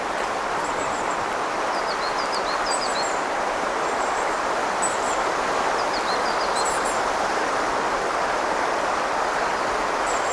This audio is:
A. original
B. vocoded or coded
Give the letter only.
B